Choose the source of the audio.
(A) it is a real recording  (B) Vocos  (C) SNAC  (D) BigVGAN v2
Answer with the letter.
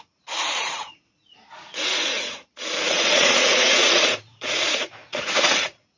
B